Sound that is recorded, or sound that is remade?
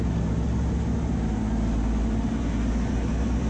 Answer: recorded